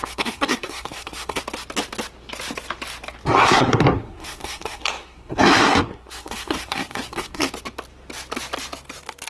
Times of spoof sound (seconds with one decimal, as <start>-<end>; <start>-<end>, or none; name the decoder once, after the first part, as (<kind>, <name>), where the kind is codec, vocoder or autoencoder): 0.0-1.4 (codec, SNAC); 3.4-7.5

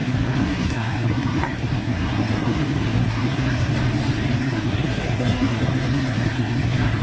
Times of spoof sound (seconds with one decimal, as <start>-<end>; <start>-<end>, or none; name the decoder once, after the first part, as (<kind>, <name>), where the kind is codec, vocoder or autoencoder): 0.0-3.7 (codec, SNAC); 4.4-7.0

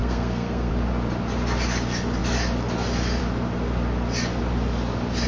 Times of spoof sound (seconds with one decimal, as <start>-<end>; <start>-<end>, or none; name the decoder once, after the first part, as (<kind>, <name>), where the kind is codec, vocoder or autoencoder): 0.0-0.7 (codec, SNAC)

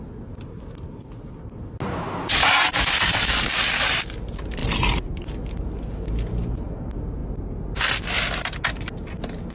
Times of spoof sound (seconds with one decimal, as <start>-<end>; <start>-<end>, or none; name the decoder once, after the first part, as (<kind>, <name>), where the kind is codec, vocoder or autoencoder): none

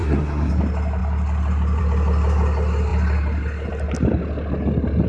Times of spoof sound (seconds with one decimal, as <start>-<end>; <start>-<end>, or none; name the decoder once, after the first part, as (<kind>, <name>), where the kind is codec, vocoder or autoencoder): 0.0-0.5 (codec, SNAC)